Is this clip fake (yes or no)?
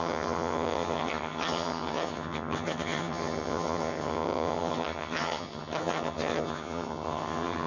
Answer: yes